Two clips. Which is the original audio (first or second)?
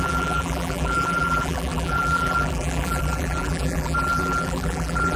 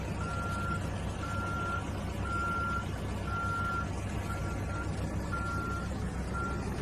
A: second